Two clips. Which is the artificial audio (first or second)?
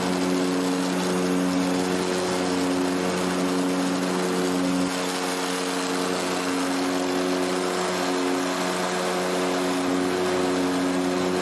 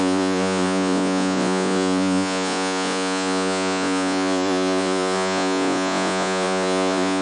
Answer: second